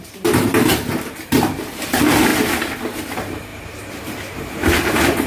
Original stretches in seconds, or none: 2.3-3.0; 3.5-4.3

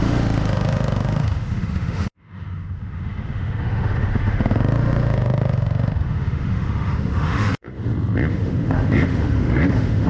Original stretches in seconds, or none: 7.8-8.3

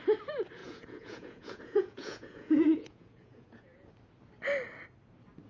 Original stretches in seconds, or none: 0.0-0.6; 3.9-5.5

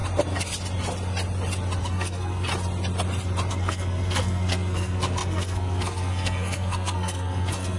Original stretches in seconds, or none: 0.0-1.8; 2.5-3.5

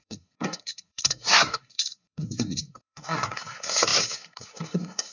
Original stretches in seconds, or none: none